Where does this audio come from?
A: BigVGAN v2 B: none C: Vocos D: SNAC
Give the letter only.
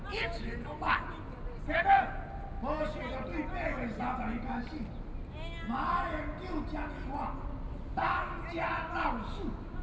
B